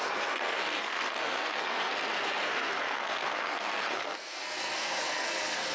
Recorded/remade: remade